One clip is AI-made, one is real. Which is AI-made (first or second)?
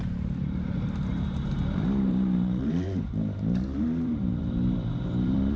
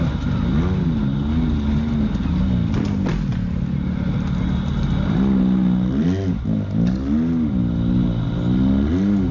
first